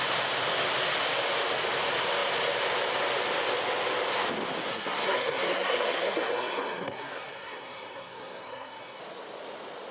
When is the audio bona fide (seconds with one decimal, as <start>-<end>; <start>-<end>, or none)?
0.0-4.7; 9.0-9.9